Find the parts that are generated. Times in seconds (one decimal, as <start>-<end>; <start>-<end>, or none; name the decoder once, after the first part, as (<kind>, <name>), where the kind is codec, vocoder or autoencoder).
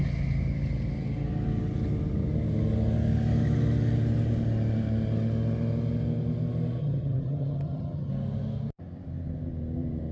6.8-8.1 (vocoder, HiFi-GAN)